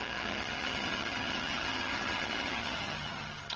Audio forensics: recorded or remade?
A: remade